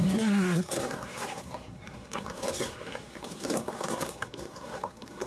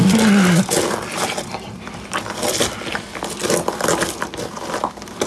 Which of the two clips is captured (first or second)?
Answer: second